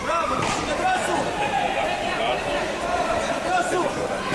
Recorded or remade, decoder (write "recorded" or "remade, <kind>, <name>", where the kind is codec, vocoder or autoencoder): remade, vocoder, BigVGAN v2